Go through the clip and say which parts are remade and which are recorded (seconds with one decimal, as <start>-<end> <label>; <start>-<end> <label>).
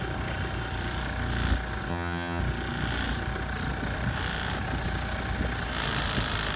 0.0-1.9 recorded; 1.9-2.4 remade; 2.4-6.6 recorded